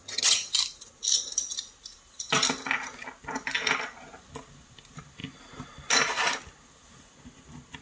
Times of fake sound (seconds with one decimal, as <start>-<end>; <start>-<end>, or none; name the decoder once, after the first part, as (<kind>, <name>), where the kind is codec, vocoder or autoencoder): 0.0-0.5 (vocoder, HiFi-GAN)